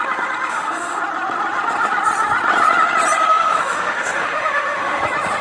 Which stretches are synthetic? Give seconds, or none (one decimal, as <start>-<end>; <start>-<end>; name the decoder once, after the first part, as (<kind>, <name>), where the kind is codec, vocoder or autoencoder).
0.5-1.0 (autoencoder, DAC-VAE); 3.3-5.0